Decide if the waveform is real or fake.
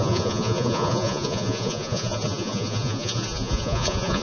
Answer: fake